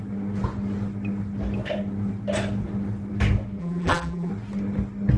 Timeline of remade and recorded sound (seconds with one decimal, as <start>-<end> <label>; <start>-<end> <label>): 0.0-3.6 recorded; 3.6-4.3 remade; 4.3-5.2 recorded

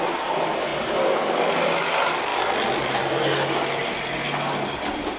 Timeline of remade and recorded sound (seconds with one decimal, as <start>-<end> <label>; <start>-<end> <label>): 0.0-5.2 recorded